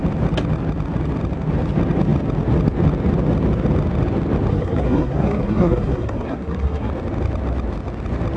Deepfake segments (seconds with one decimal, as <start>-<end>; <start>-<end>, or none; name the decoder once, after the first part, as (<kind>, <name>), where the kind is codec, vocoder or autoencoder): 4.5-6.9 (codec, SNAC)